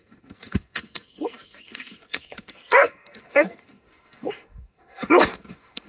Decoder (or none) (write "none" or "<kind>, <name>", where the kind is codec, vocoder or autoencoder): codec, SNAC